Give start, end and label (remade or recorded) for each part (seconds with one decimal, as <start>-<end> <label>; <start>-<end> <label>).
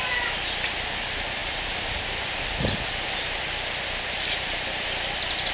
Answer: 0.0-5.5 recorded